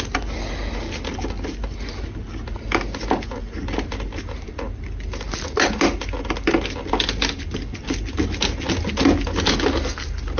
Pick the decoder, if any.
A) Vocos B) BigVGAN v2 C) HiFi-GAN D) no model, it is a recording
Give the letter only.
D